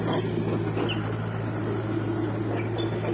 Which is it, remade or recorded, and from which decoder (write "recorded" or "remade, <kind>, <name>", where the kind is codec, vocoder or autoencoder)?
recorded